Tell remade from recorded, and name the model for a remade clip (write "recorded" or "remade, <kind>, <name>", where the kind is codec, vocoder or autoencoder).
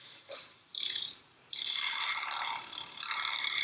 remade, vocoder, BigVGAN v2